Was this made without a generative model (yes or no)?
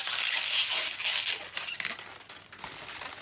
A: yes